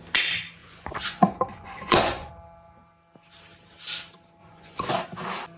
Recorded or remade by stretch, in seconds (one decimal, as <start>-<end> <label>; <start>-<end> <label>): 0.0-0.6 recorded; 0.6-2.3 remade; 2.3-4.4 recorded; 4.4-4.9 remade; 4.9-5.6 recorded